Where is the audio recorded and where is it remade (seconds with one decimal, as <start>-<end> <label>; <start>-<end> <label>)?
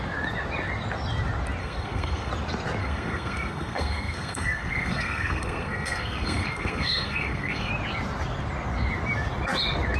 0.0-1.6 recorded; 1.6-2.3 remade; 2.3-2.8 recorded; 2.8-7.7 remade; 7.7-10.0 recorded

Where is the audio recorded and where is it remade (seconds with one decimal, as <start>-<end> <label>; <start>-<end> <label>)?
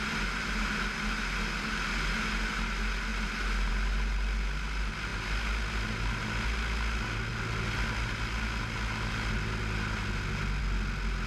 0.0-11.3 recorded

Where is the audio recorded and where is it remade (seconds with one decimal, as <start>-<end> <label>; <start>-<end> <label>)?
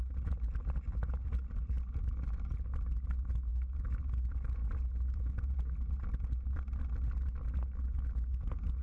0.0-8.8 recorded